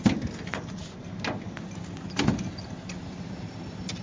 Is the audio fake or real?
real